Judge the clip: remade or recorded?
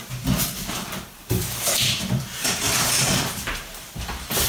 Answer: remade